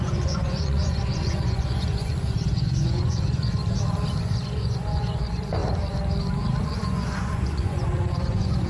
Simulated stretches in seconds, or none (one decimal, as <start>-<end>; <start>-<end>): 0.0-3.6; 4.2-5.6; 6.6-8.7